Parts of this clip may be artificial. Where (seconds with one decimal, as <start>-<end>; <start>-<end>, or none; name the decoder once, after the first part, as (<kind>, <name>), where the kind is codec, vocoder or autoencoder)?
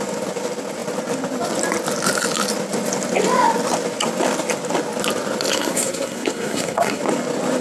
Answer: 5.5-7.0 (codec, SNAC)